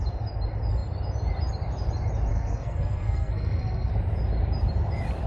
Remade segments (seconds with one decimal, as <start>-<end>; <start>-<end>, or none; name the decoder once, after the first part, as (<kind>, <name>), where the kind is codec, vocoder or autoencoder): 2.3-3.9 (codec, SNAC)